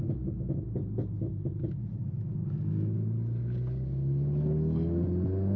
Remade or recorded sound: recorded